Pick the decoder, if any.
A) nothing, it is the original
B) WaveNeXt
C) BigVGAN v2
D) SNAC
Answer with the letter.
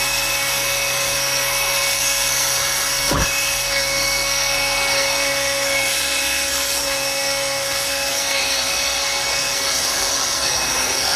D